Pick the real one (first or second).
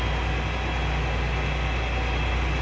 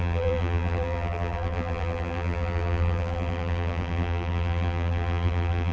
first